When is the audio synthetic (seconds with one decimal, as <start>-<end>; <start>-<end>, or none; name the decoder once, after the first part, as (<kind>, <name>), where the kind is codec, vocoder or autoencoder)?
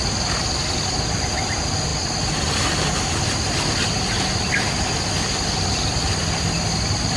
none